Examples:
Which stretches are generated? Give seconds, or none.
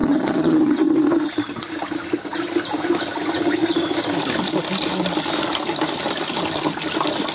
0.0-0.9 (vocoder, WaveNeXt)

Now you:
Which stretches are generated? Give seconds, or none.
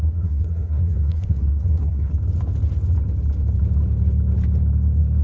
0.0-2.1 (codec, SNAC)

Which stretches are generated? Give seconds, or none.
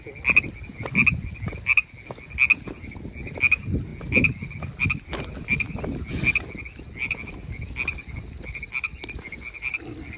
none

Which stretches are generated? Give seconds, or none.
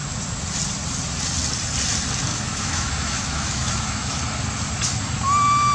2.3-4.2 (autoencoder, DAC-VAE)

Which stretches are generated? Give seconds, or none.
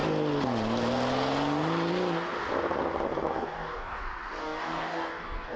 3.3-4.0 (codec, DAC); 4.4-5.6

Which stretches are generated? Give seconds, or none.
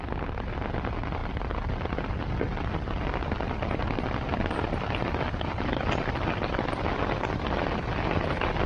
none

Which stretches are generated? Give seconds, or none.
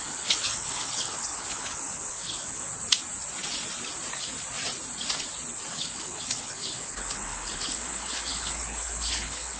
0.0-2.7 (codec, HILCodec); 5.7-9.6